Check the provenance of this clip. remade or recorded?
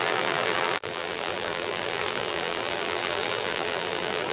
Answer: remade